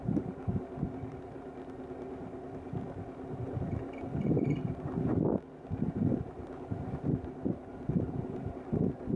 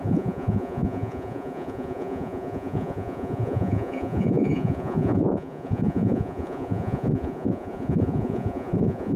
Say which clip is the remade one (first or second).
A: second